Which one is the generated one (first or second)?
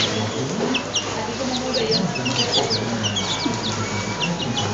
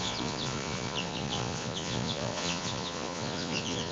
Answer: second